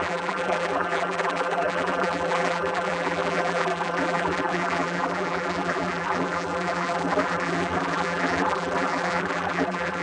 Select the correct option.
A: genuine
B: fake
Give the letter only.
B